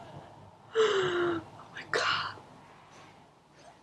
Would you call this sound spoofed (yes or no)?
no